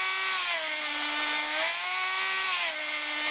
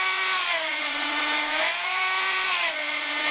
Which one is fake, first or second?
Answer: second